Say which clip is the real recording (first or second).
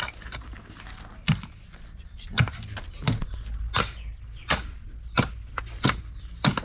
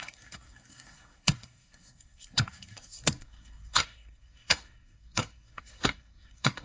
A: first